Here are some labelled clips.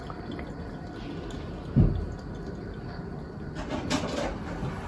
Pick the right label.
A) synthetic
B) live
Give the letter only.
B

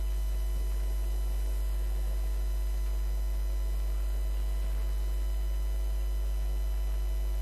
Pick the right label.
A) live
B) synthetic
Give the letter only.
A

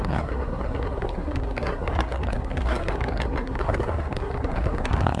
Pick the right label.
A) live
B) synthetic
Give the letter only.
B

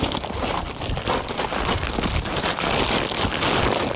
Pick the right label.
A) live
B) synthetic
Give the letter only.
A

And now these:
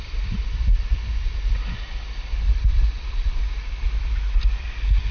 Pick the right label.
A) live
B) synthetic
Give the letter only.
A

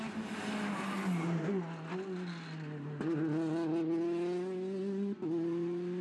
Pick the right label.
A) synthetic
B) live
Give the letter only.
B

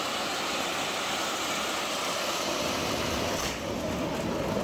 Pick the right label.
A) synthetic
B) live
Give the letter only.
B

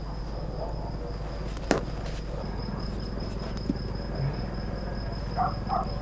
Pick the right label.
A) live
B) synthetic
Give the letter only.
A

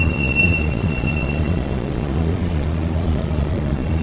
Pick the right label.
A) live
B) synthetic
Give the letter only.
B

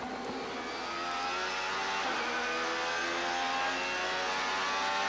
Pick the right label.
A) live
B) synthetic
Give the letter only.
A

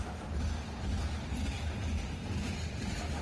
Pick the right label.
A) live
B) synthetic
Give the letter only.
A